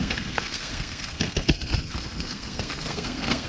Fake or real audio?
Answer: fake